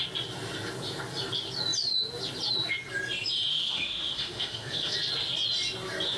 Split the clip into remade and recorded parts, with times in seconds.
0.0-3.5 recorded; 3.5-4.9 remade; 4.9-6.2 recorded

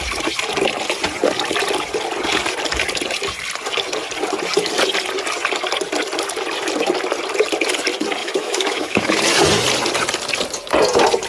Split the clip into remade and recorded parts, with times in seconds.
0.0-8.2 recorded; 8.2-9.2 remade; 9.2-11.3 recorded

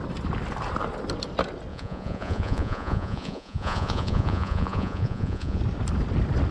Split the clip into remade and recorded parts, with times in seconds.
0.0-1.7 recorded; 1.7-5.6 remade; 5.6-6.5 recorded

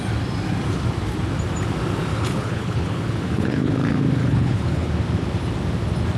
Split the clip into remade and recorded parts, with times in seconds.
0.0-2.1 recorded; 2.1-3.7 remade; 3.7-4.2 recorded; 4.2-4.9 remade; 4.9-6.2 recorded